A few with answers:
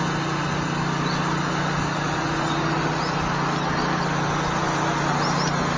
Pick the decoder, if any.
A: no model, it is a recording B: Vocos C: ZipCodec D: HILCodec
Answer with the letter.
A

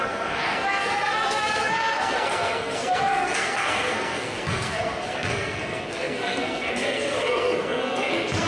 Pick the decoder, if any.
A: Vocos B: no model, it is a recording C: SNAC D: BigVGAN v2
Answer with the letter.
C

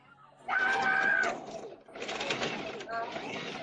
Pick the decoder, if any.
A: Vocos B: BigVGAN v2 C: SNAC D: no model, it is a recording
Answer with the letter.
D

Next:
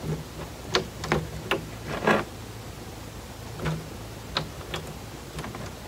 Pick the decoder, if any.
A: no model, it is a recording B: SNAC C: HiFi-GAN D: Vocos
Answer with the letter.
A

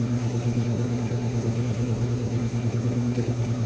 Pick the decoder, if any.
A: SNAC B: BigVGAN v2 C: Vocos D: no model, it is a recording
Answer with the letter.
A